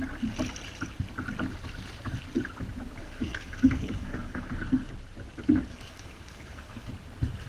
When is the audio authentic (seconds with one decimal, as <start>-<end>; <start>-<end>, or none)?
0.0-3.0; 4.9-5.7; 6.9-7.5